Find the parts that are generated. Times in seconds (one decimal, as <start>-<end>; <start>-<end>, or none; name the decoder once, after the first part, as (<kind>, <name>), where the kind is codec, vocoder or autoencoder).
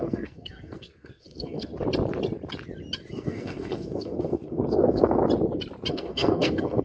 0.0-1.7 (codec, SNAC); 3.1-5.2; 5.9-6.8